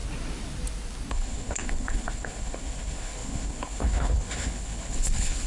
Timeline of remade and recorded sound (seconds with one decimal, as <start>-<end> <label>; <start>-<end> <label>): 0.0-1.1 recorded; 1.1-5.5 remade